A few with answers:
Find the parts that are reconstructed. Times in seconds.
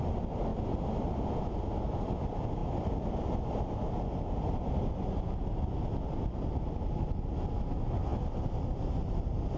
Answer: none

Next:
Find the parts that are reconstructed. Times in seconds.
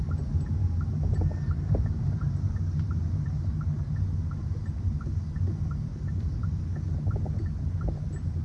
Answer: 5.9-6.6 (vocoder, BigVGAN v2)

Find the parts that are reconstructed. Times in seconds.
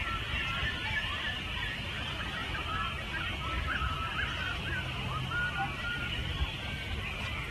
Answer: 0.8-1.4 (vocoder, BigVGAN v2)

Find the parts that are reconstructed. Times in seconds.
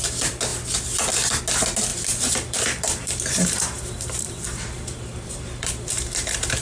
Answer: 1.9-5.9 (vocoder, BigVGAN v2)